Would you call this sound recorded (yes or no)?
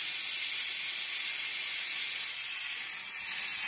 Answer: yes